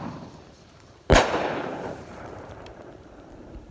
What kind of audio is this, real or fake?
fake